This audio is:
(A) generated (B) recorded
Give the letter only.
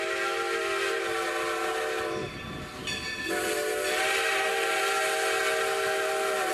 B